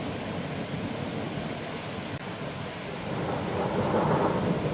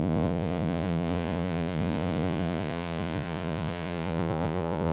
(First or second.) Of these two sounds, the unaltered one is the first